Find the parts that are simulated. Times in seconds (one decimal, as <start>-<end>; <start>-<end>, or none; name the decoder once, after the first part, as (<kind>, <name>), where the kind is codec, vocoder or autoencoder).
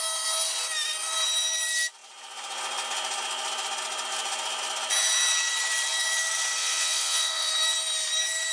6.6-7.5 (vocoder, Vocos)